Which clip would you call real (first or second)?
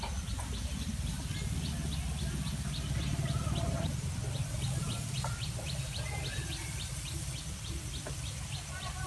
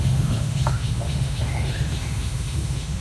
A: first